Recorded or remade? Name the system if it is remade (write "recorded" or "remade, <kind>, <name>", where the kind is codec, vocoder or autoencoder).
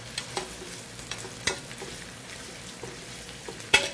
remade, vocoder, BigVGAN v2